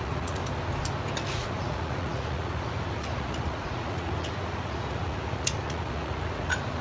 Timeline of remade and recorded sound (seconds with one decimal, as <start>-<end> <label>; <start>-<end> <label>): 0.0-0.4 remade; 0.4-1.3 recorded; 1.3-6.8 remade